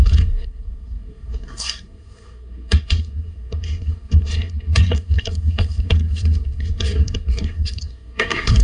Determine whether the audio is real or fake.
fake